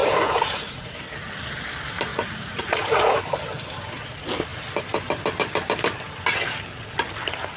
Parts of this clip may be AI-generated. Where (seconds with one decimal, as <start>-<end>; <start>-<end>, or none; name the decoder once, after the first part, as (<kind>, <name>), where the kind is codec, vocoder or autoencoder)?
0.0-1.0 (vocoder, Vocos); 2.1-3.2